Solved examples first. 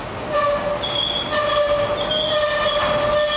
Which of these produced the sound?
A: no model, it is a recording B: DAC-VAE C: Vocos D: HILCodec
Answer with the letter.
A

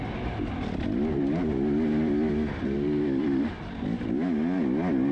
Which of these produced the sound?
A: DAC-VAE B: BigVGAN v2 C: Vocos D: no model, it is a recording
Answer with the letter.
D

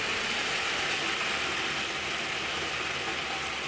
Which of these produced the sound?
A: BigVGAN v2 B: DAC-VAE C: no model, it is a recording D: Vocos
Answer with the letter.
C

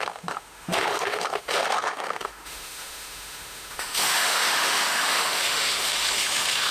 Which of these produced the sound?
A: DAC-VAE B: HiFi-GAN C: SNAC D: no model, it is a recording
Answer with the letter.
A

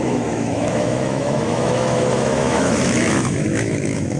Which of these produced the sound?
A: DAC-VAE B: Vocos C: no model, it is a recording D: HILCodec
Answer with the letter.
A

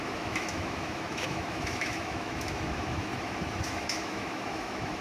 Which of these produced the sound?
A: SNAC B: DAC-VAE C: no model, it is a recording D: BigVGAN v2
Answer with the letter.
B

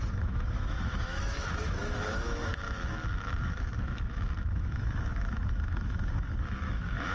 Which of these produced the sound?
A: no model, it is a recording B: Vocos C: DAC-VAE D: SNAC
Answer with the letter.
C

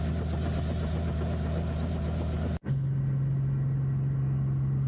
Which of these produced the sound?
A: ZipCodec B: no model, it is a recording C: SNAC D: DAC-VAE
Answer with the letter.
B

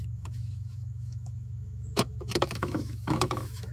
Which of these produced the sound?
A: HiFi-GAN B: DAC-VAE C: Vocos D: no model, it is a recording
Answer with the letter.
B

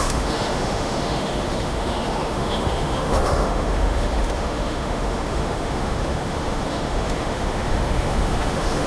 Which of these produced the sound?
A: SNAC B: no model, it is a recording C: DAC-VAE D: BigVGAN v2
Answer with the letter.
C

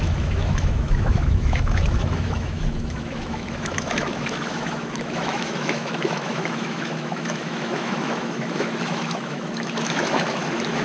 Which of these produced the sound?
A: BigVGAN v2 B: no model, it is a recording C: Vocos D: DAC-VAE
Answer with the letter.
D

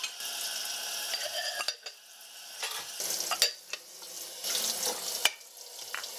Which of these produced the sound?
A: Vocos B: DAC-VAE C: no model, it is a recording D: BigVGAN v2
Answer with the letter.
C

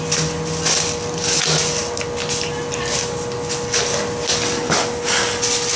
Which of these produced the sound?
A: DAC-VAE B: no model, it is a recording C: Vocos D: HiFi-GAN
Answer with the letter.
B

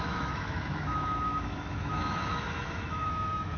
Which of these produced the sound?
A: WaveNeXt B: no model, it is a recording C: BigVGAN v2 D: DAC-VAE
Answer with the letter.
D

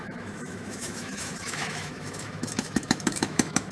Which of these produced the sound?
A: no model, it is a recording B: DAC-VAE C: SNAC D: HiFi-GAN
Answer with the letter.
B